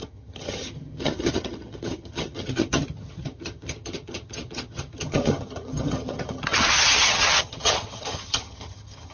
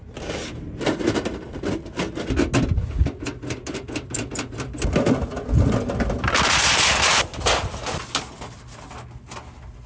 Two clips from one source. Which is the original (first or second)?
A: second